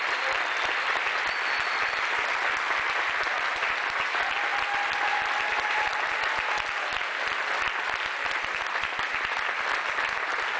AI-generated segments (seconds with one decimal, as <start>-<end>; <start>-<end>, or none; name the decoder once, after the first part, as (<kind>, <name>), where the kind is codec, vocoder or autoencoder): none